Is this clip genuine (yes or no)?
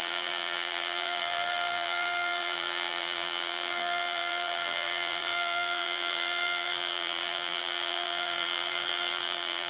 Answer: no